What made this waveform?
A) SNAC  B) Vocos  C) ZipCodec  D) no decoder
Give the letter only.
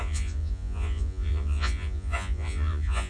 B